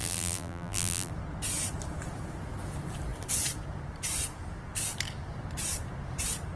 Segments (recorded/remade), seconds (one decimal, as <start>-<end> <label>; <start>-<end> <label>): 0.0-1.1 remade; 1.1-6.6 recorded